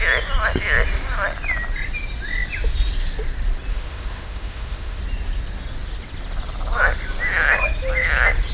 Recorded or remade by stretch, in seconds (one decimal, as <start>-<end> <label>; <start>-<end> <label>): 0.0-3.7 recorded; 3.7-5.0 remade; 5.0-8.5 recorded